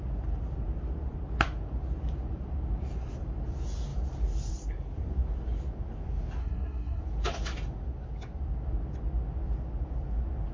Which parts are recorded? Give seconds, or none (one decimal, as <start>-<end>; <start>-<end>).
0.0-6.4; 7.0-10.5